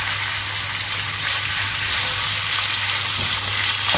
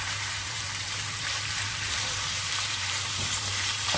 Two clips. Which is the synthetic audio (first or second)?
second